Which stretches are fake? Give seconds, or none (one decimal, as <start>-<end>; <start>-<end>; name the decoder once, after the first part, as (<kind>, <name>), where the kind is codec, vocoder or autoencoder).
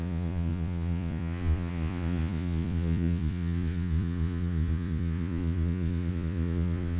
0.0-7.0 (vocoder, Vocos)